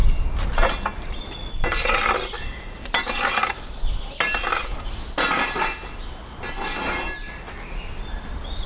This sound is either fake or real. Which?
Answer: real